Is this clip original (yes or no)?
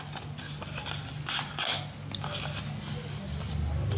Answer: yes